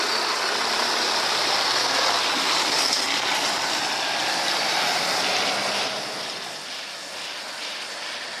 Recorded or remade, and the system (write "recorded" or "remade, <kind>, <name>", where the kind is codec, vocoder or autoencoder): recorded